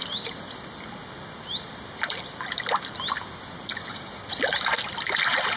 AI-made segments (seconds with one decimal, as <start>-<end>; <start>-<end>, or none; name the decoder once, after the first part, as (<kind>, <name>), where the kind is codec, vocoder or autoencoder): none